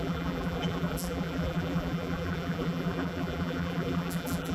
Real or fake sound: fake